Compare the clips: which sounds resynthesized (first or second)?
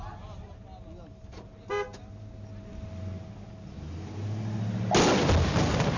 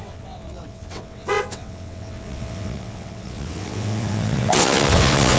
second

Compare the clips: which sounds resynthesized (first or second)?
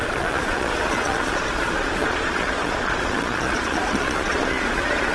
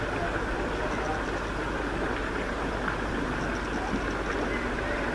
first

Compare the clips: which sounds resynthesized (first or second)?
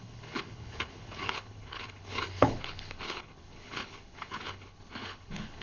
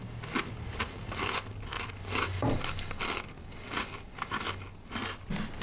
first